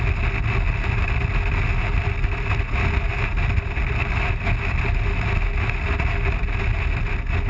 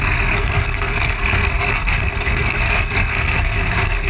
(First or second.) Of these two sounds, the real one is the first